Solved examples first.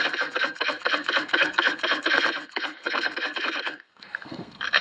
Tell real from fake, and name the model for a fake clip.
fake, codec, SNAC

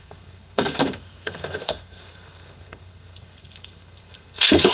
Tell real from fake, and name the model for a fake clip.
fake, codec, SNAC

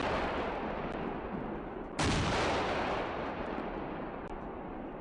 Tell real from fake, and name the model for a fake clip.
real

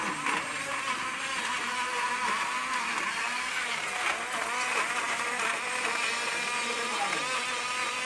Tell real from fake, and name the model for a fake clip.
real